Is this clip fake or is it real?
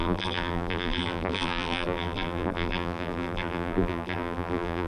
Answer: fake